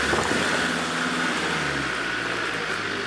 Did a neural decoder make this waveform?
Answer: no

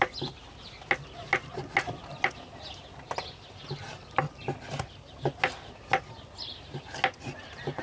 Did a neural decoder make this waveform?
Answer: no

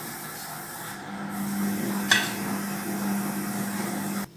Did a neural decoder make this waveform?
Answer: no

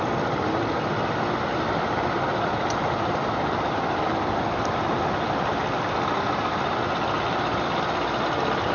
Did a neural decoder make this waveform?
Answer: no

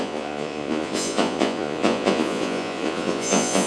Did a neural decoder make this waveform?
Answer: yes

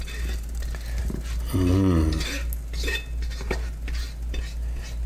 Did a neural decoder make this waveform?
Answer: no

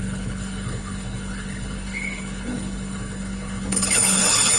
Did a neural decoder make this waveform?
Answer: yes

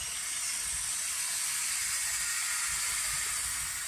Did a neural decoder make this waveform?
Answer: no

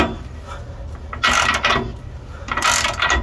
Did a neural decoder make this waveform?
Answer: no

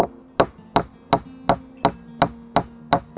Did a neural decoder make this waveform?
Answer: no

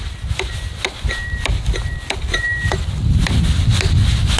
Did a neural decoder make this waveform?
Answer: no